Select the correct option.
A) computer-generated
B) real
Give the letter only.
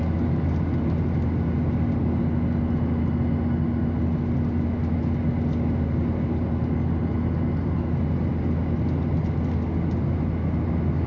B